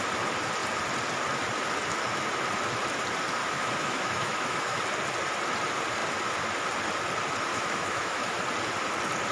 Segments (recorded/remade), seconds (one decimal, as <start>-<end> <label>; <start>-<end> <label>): 0.0-3.4 recorded; 3.4-4.8 remade; 4.8-7.5 recorded; 7.5-8.4 remade; 8.4-9.3 recorded